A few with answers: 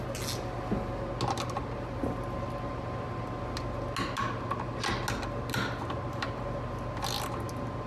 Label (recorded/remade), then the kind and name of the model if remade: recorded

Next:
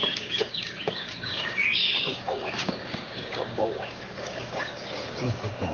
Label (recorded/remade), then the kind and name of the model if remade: remade, codec, DAC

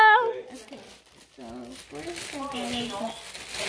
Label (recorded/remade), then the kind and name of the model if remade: recorded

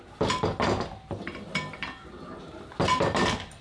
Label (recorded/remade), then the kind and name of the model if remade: recorded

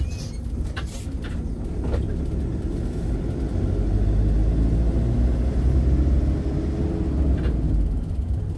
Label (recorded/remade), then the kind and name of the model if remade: recorded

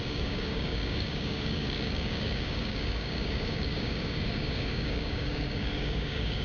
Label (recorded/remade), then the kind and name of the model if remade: remade, codec, DAC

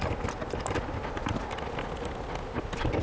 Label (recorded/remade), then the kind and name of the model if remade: recorded